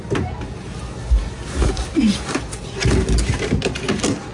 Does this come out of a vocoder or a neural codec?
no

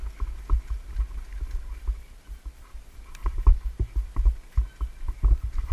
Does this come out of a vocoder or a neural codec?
no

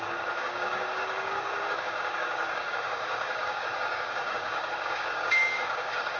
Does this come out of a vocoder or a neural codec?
yes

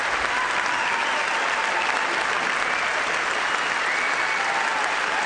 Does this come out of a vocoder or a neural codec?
no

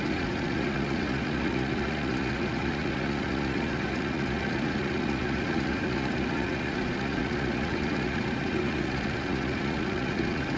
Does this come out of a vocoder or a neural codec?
yes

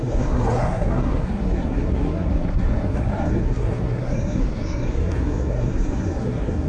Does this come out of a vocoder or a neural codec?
yes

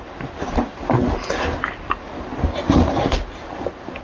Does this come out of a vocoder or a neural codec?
no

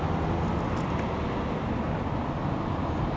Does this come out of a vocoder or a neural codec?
no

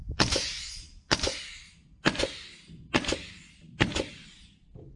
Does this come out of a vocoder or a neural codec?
no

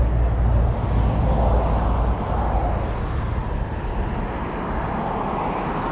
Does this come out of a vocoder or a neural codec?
no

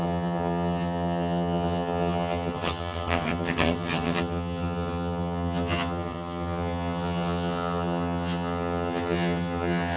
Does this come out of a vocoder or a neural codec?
yes